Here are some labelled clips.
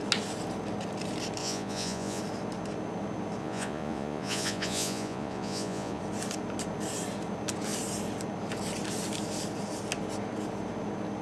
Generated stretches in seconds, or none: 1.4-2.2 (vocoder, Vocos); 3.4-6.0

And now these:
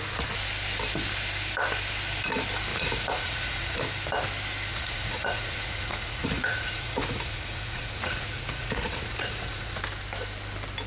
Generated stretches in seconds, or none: 2.7-3.8 (vocoder, Vocos); 4.7-9.8